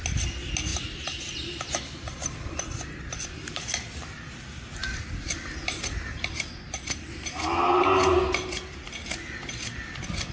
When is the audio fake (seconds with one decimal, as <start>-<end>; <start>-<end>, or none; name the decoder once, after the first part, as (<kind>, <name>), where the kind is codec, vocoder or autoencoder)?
none